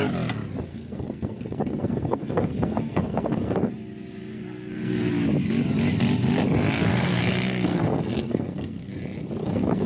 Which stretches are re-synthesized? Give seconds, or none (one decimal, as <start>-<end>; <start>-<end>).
0.7-3.7; 4.3-5.1; 6.9-8.9; 9.4-9.9

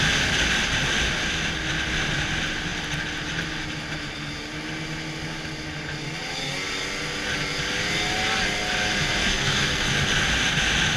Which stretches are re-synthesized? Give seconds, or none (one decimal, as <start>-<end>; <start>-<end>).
9.2-9.9

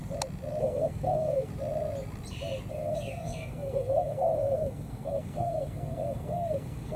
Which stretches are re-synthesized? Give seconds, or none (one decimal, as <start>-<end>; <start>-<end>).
0.6-1.5; 2.7-7.0

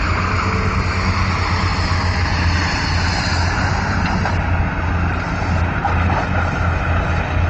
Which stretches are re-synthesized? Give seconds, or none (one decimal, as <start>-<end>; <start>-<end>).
none